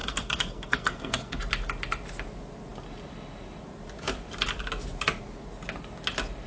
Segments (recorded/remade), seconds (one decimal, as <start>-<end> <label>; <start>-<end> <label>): 0.0-1.4 remade; 1.4-6.5 recorded